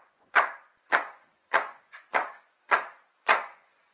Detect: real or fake fake